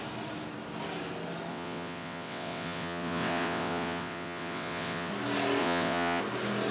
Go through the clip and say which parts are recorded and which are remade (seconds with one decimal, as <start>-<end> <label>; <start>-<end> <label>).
0.0-1.5 recorded; 1.5-5.1 remade; 5.1-5.6 recorded; 5.6-6.2 remade; 6.2-6.7 recorded